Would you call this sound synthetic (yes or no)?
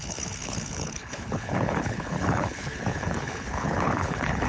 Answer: yes